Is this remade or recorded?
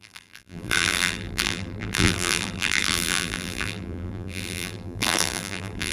remade